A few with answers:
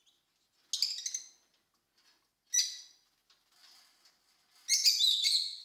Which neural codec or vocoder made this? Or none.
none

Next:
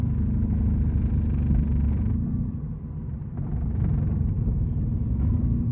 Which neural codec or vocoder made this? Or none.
none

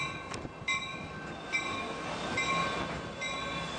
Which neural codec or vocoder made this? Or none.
none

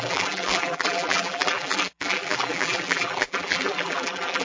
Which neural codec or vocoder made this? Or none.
vocoder, BigVGAN v2